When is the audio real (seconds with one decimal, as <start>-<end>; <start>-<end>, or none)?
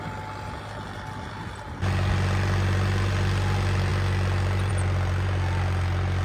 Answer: 0.0-6.2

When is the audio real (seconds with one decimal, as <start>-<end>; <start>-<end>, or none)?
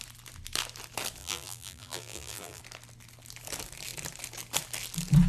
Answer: 0.0-1.2; 2.6-5.3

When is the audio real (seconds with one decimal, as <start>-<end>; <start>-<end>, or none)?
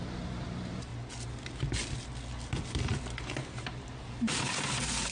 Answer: 0.9-3.3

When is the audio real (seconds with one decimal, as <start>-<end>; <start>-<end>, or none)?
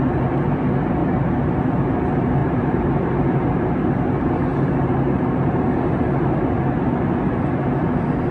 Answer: 0.0-1.0; 1.6-2.4; 2.9-4.5; 5.8-8.3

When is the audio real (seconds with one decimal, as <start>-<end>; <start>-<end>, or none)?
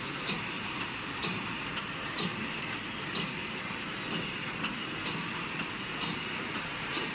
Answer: 2.3-6.6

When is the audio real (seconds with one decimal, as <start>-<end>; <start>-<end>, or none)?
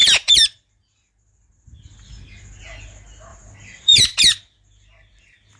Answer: 1.5-3.3; 4.2-5.6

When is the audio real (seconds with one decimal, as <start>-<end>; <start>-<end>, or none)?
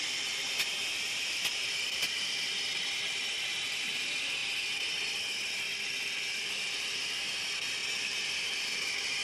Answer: 4.4-5.8